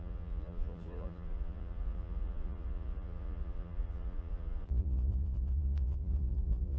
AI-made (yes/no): yes